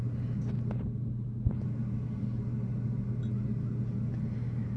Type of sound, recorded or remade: recorded